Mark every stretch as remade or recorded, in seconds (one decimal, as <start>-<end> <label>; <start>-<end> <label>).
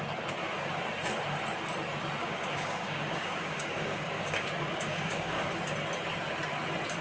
0.0-2.2 recorded; 2.2-5.5 remade; 5.5-7.0 recorded